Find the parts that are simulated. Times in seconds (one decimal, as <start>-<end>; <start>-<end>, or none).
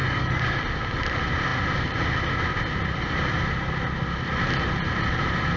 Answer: 0.0-0.6